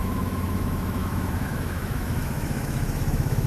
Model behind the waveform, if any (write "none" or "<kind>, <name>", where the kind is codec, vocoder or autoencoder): autoencoder, DAC-VAE